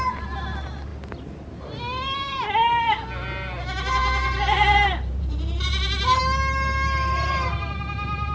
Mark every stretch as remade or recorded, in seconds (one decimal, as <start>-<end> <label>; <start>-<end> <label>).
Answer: 0.0-4.0 recorded; 4.0-6.2 remade; 6.2-8.3 recorded